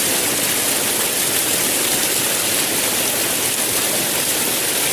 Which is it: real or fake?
real